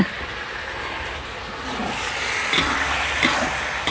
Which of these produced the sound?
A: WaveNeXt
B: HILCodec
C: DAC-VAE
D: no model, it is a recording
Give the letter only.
D